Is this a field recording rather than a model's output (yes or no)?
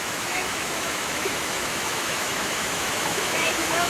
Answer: no